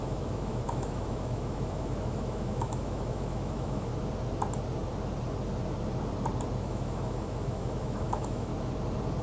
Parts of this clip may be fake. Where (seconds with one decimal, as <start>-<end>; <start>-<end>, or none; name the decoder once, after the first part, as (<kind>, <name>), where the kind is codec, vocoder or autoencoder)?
0.0-3.9 (autoencoder, DAC-VAE); 6.6-8.5